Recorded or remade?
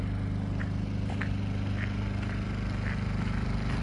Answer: recorded